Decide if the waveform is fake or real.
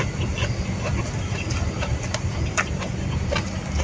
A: real